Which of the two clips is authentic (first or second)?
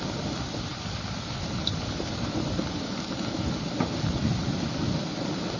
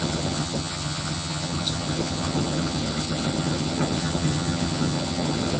first